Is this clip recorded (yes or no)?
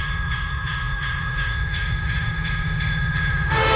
no